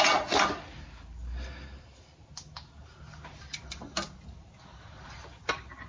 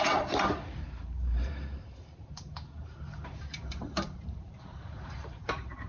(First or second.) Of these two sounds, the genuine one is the first